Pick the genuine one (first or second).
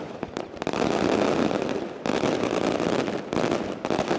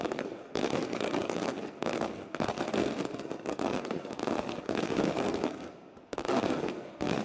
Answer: first